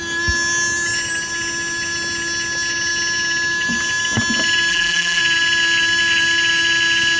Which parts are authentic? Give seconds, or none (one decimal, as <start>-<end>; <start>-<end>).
0.0-4.7; 5.2-7.2